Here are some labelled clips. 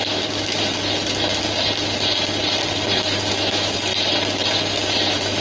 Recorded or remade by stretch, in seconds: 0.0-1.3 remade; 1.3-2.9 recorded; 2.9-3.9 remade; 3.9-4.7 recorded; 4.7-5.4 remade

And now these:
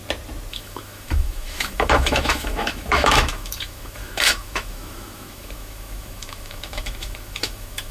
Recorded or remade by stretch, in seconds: 0.0-0.5 recorded; 0.5-7.9 remade

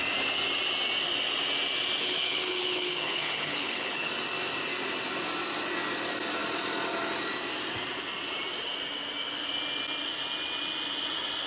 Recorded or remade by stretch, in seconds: 0.0-2.0 recorded; 2.0-4.1 remade; 4.1-11.5 recorded

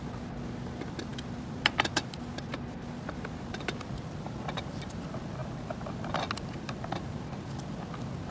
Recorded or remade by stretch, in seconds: 0.0-8.3 recorded